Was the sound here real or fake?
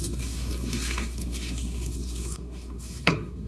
fake